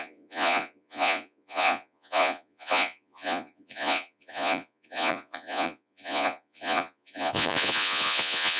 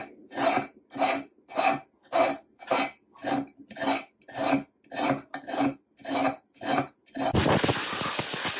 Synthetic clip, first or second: first